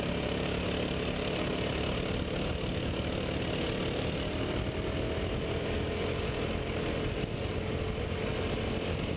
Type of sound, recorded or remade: recorded